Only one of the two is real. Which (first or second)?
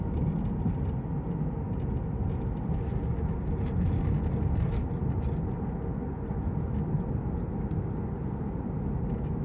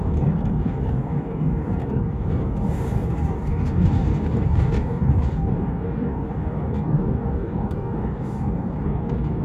first